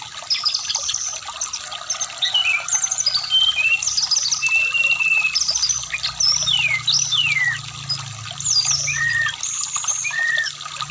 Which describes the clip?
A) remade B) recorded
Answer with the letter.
B